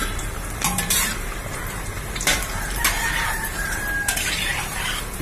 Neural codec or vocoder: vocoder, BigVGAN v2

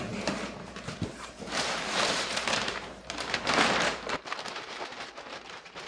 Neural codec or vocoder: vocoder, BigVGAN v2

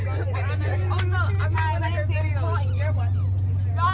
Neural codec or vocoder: none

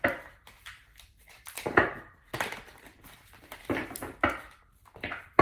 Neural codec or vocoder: vocoder, BigVGAN v2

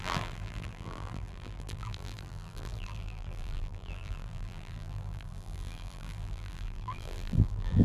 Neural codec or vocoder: vocoder, BigVGAN v2